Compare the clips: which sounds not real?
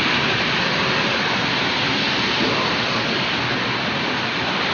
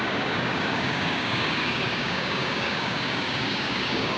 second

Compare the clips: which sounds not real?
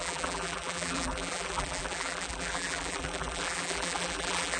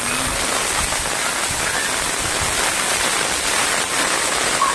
first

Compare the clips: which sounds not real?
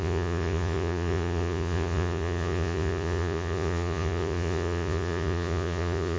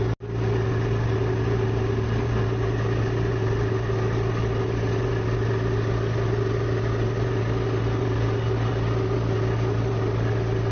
first